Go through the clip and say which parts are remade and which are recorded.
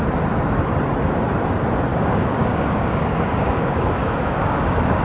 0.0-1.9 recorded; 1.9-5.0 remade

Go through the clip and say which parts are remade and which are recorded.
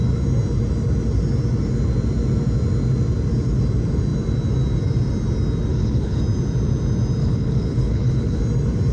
0.0-5.7 recorded; 5.7-6.2 remade; 6.2-7.2 recorded; 7.2-8.4 remade; 8.4-8.9 recorded